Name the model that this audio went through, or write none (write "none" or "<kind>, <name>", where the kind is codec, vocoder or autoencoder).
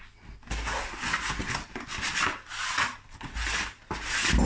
none